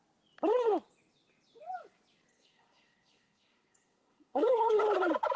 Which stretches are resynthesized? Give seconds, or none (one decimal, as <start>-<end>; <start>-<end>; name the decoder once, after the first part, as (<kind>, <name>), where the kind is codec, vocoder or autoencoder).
2.3-4.8 (codec, SNAC)